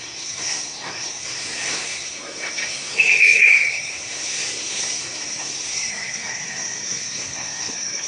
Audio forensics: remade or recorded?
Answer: remade